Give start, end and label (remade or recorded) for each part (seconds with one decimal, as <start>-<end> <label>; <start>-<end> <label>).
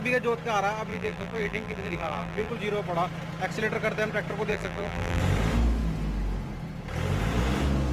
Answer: 0.0-0.9 recorded; 0.9-2.5 remade; 2.5-4.5 recorded; 4.5-5.2 remade; 5.2-7.9 recorded